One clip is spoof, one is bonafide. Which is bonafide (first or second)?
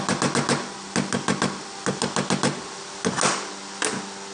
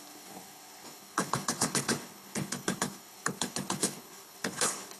first